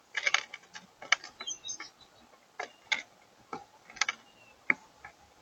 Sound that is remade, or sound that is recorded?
recorded